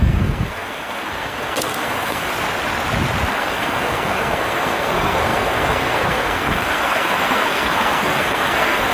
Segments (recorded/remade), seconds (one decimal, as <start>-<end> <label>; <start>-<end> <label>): 0.0-2.3 remade; 2.3-3.3 recorded; 3.3-8.9 remade

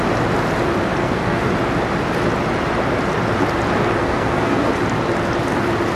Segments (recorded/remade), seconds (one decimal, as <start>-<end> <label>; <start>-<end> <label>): 0.0-1.0 recorded; 1.0-1.5 remade; 1.5-4.0 recorded; 4.0-4.7 remade; 4.7-6.0 recorded

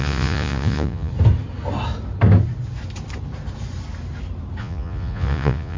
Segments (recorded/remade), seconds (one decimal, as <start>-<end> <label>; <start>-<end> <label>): 0.0-1.1 remade; 1.1-4.6 recorded; 4.6-5.8 remade

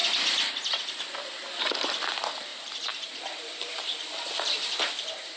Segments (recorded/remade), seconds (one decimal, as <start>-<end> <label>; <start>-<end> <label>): 0.0-2.5 recorded; 2.5-5.4 remade

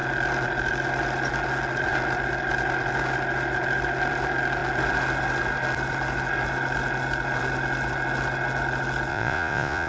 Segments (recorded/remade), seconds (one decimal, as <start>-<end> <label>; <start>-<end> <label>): 0.0-9.1 recorded; 9.1-9.9 remade